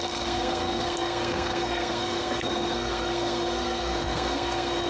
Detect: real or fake fake